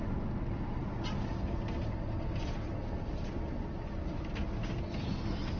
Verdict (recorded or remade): recorded